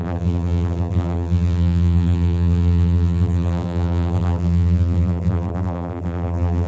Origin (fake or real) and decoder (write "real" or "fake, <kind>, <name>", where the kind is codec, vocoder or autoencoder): fake, vocoder, BigVGAN v2